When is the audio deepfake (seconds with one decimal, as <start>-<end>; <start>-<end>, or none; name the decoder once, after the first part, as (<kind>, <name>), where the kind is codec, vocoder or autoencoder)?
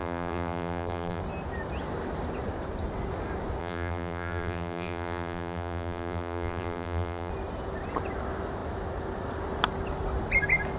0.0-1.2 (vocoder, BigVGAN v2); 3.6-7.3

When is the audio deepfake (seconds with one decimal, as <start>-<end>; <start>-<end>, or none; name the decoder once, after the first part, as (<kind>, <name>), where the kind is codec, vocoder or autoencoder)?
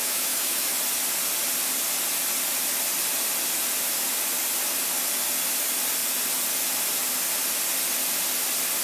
0.0-0.8 (autoencoder, DAC-VAE)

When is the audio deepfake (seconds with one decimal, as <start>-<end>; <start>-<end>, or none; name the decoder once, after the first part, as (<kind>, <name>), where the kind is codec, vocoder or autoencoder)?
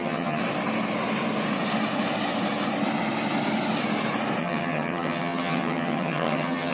0.0-0.4 (vocoder, HiFi-GAN); 4.4-6.7